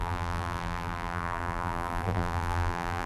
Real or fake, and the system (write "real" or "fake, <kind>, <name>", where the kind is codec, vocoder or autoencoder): fake, vocoder, BigVGAN v2